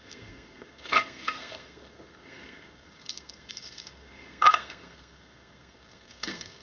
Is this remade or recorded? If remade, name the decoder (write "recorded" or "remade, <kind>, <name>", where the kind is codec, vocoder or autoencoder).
remade, codec, SNAC